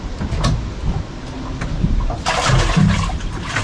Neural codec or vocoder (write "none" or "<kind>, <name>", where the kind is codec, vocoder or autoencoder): none